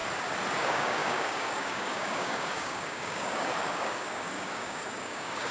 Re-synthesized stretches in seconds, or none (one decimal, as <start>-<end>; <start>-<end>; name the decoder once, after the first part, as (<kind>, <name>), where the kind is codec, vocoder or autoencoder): 0.5-5.5 (codec, DAC)